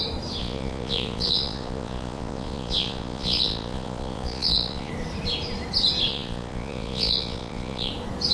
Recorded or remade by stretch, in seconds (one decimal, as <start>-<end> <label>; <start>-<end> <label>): 0.0-0.4 recorded; 0.4-4.9 remade; 4.9-6.1 recorded; 6.1-7.9 remade; 7.9-8.3 recorded